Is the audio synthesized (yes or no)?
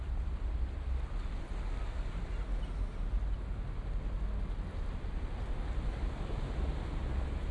no